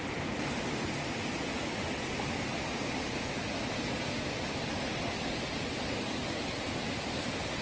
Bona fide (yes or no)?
yes